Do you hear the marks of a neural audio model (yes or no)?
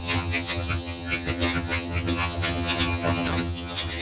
yes